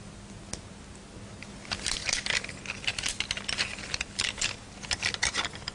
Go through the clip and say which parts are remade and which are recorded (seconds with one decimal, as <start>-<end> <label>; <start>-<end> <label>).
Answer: 0.0-5.7 recorded